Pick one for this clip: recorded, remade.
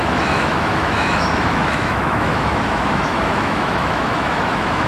remade